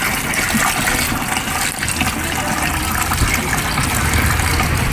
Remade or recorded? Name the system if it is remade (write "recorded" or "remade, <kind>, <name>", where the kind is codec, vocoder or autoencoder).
recorded